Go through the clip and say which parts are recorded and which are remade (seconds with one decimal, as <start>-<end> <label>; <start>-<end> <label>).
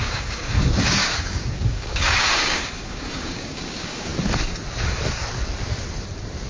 0.0-4.1 remade; 4.1-6.5 recorded